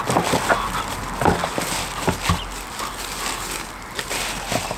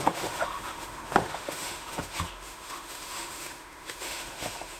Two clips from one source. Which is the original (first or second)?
first